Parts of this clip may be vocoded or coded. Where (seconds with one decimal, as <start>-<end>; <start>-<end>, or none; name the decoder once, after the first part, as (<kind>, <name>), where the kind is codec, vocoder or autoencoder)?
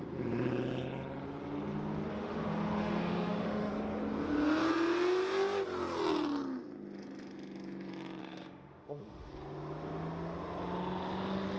2.1-3.7 (autoencoder, DAC-VAE); 8.2-9.3